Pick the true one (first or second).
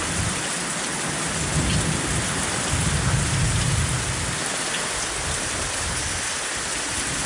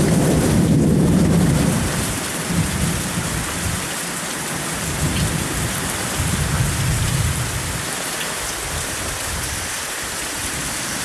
first